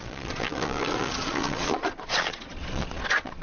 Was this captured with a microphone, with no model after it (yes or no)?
no